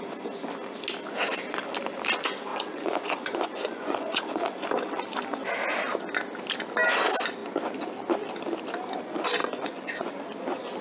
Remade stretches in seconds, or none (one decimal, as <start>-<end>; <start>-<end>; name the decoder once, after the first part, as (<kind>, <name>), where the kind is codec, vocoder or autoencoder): 2.5-4.2 (vocoder, Vocos); 9.4-10.1